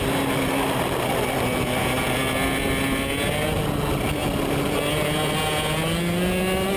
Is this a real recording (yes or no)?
yes